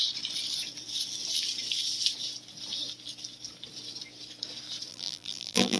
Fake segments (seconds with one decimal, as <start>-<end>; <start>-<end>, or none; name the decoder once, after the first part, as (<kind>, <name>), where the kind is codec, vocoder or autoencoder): 4.9-5.8 (vocoder, BigVGAN v2)